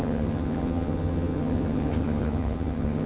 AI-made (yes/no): yes